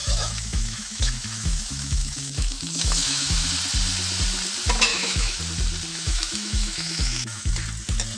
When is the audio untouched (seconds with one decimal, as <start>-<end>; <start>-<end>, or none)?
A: 3.5-4.9; 5.4-5.9; 7.5-8.2